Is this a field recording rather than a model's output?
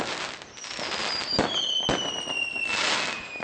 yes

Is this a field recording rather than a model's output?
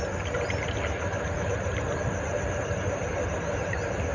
yes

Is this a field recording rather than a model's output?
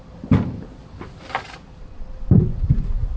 yes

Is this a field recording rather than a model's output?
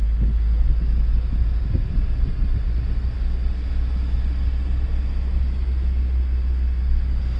yes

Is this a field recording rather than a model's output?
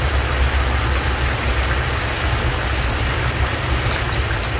yes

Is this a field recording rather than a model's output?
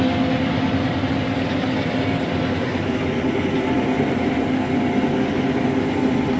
yes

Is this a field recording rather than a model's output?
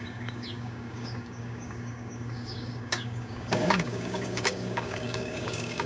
no